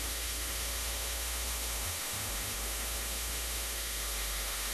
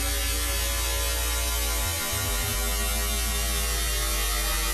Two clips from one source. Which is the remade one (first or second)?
first